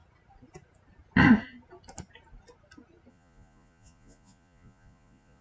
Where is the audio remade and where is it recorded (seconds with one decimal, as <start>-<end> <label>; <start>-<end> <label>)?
0.0-3.1 recorded; 3.1-5.4 remade